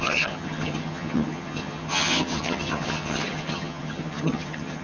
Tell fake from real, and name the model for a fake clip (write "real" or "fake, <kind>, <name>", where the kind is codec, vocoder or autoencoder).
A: fake, vocoder, HiFi-GAN